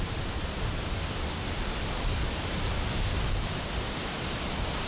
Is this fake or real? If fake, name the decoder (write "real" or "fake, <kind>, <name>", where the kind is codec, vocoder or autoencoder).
real